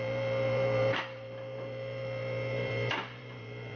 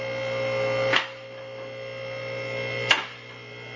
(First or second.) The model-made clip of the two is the first